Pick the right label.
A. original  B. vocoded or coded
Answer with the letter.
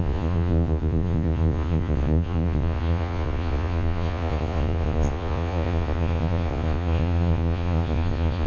B